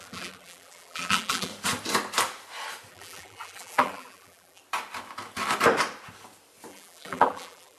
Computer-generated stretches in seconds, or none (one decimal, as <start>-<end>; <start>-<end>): 0.0-1.5; 2.9-4.6; 6.7-7.8